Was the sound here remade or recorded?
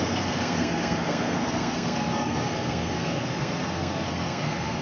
remade